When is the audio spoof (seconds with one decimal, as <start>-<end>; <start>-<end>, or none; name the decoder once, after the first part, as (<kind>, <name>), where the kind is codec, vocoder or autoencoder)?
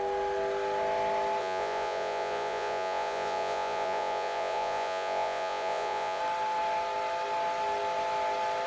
1.4-6.2 (vocoder, Vocos)